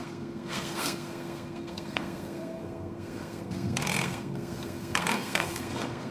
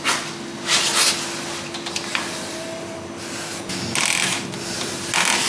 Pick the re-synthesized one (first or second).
first